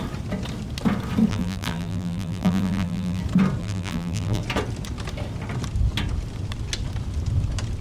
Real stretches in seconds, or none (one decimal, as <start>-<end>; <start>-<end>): 0.0-1.3; 3.2-3.6; 4.4-7.8